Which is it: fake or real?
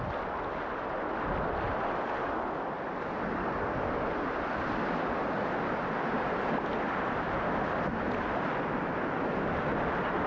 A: real